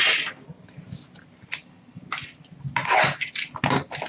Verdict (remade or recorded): recorded